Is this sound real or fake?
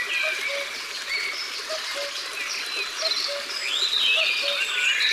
real